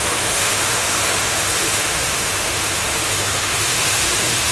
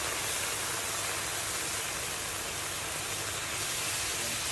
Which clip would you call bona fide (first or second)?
second